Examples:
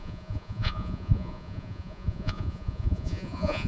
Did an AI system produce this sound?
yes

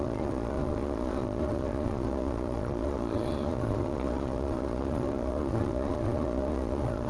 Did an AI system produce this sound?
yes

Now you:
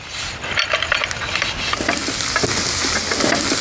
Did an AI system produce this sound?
no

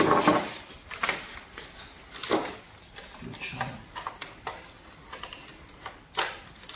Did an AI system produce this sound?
no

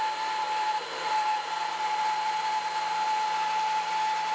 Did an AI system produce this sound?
no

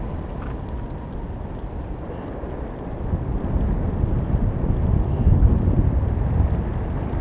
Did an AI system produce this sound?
no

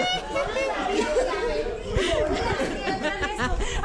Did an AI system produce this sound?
no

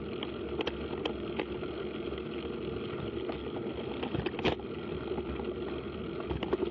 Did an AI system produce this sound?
no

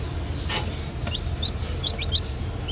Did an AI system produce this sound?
no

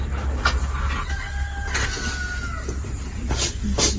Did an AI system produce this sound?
no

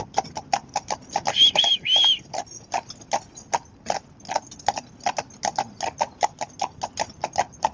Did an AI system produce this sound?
no